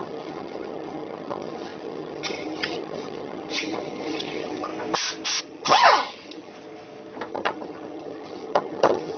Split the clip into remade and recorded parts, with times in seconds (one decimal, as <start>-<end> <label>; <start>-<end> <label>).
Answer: 0.0-4.7 remade; 4.7-5.4 recorded; 5.4-6.5 remade; 6.5-7.3 recorded; 7.3-9.2 remade